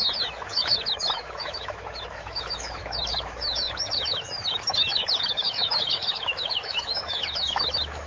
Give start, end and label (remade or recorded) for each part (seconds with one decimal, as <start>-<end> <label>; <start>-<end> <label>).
0.0-8.1 remade

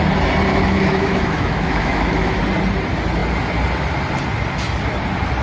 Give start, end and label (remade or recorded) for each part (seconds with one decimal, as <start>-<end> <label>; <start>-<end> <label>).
0.0-0.5 recorded; 0.5-2.4 remade; 2.4-5.4 recorded

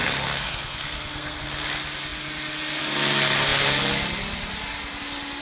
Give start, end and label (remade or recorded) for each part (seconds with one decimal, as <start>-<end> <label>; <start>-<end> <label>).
0.0-1.4 remade; 1.4-5.4 recorded